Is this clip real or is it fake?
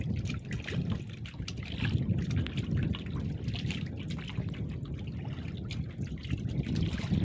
real